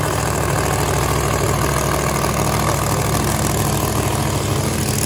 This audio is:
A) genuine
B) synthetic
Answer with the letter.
A